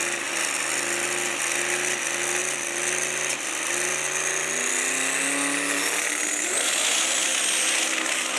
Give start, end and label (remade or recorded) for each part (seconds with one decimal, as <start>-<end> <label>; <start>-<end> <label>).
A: 0.0-8.4 recorded